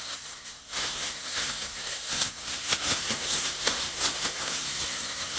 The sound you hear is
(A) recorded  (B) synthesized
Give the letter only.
B